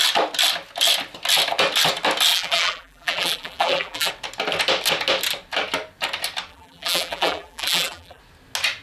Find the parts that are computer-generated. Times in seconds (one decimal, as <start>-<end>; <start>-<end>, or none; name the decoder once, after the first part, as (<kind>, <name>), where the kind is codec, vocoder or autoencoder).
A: 2.3-4.1 (vocoder, BigVGAN v2); 6.5-8.2